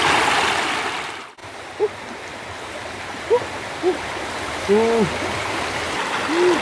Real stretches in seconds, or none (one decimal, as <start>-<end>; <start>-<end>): 0.0-6.6